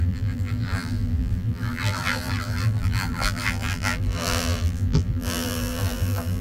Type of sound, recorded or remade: remade